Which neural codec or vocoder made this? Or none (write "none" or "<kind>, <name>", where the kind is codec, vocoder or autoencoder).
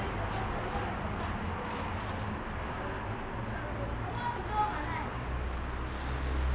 none